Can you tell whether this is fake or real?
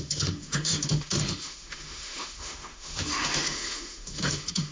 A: fake